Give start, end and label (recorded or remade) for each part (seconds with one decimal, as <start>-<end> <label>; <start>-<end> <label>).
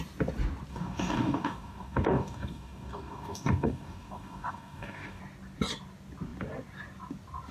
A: 0.0-0.7 recorded; 0.7-5.2 remade; 5.2-7.5 recorded